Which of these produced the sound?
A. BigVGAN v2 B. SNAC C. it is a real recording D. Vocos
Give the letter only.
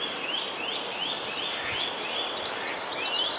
C